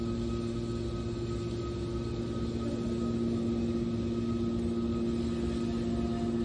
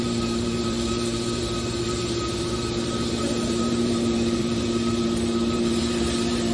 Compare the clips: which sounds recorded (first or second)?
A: first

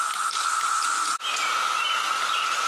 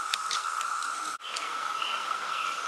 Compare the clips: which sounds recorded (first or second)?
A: first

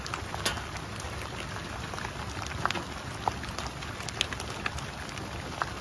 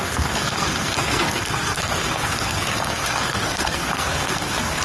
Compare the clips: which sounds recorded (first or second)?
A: first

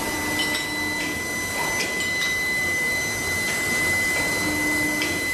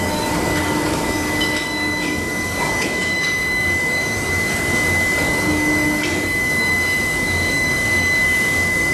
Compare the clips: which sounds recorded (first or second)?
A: first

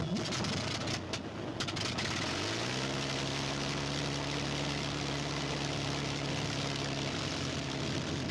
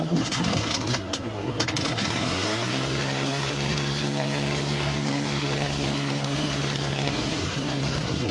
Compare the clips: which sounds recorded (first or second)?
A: first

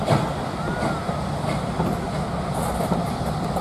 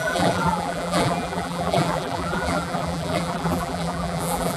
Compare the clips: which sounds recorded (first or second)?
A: first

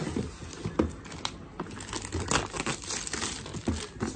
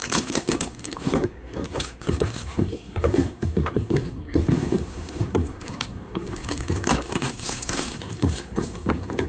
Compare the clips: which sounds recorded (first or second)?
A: first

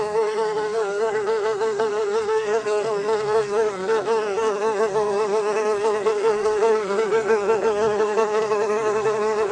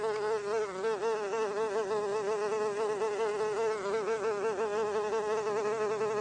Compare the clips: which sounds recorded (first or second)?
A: second